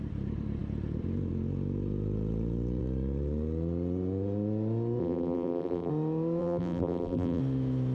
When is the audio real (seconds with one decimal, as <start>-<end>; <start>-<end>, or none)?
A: 0.0-5.0; 5.9-6.4; 7.4-7.9